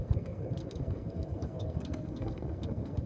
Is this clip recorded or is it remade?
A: remade